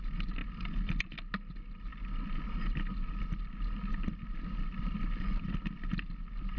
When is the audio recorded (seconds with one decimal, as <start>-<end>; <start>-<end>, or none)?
0.0-6.6